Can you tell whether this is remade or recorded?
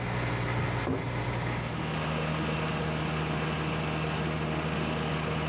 recorded